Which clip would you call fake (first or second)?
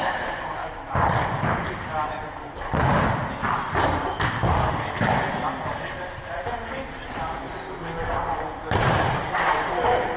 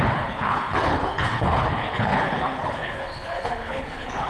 second